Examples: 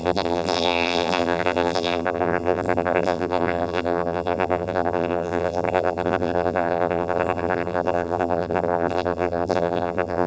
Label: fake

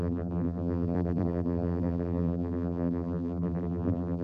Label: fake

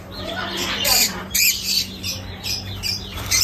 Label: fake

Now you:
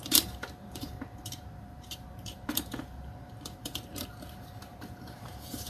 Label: fake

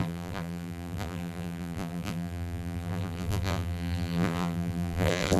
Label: fake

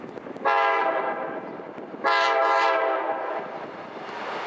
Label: real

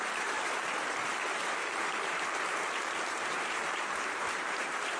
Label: fake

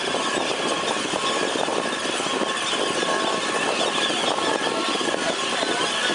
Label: real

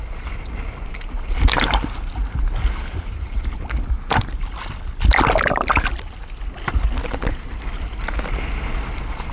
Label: real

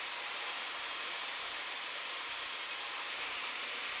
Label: fake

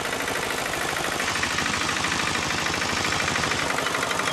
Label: fake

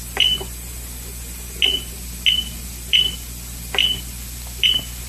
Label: real